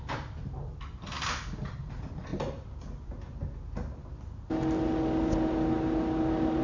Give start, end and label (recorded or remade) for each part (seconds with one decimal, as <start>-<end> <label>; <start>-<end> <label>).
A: 0.0-6.6 recorded